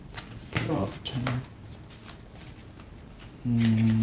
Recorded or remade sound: recorded